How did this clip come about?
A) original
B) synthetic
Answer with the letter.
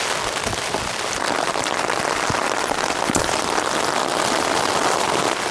A